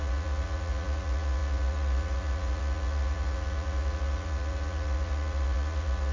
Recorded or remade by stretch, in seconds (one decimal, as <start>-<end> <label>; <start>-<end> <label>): 0.0-6.1 remade